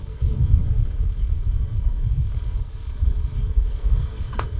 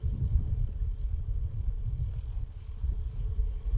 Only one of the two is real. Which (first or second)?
second